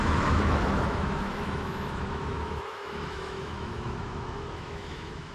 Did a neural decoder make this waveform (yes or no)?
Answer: yes